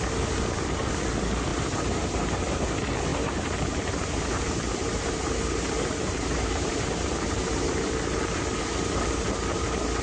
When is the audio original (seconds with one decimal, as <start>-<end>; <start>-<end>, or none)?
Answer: 0.0-1.5; 2.4-3.1; 8.4-10.0